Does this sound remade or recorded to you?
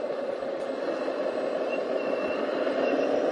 recorded